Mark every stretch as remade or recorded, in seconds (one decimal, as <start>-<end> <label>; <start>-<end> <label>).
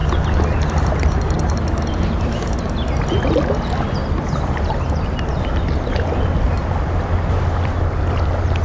0.0-8.6 recorded